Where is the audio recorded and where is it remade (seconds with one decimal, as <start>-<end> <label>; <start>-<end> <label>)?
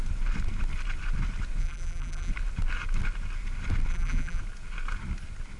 0.0-1.6 recorded; 1.6-2.3 remade; 2.3-3.9 recorded; 3.9-4.4 remade; 4.4-5.6 recorded